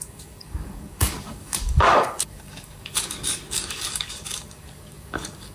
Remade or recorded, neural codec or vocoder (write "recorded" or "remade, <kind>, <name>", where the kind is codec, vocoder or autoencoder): remade, codec, DAC